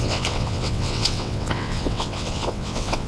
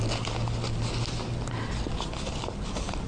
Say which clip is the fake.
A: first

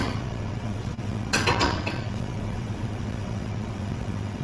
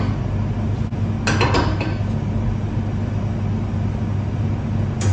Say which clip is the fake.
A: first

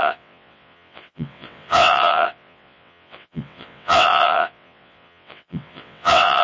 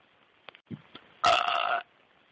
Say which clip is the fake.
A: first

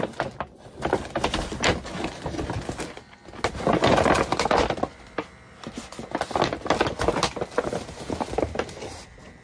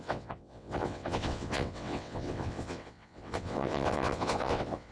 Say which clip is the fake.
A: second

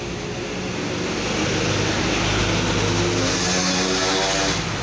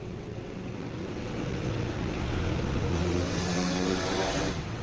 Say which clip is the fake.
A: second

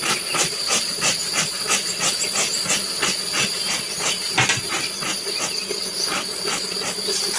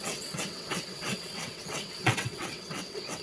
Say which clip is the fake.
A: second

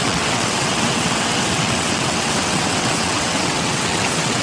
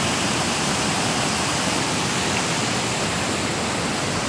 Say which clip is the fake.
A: first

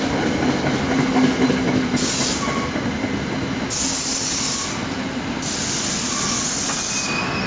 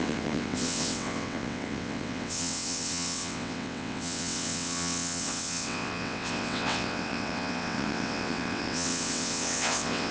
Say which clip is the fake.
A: second